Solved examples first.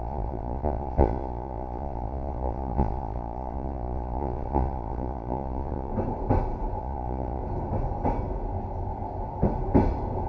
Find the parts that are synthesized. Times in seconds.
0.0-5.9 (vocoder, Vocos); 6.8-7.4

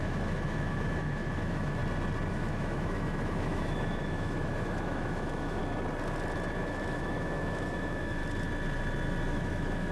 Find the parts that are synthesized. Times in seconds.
0.0-1.8 (autoencoder, DAC-VAE); 2.3-5.6; 6.6-8.2; 9.3-9.9

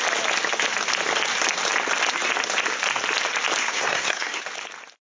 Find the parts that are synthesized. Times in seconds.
3.6-4.4 (codec, SNAC)

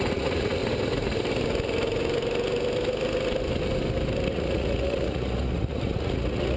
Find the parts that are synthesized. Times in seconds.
0.0-0.6 (vocoder, Vocos); 4.3-6.6